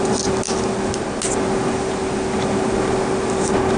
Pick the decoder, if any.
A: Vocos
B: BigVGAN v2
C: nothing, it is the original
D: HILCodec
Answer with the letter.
C